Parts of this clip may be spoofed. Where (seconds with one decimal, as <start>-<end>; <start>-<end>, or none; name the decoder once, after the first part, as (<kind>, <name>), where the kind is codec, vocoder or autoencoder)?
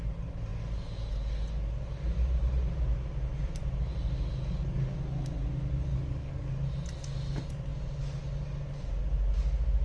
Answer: 5.9-6.5 (codec, DAC)